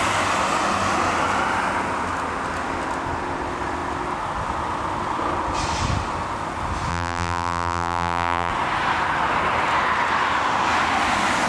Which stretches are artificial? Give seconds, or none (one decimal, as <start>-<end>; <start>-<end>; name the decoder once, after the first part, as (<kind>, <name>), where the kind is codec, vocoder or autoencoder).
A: 6.9-8.5 (vocoder, BigVGAN v2)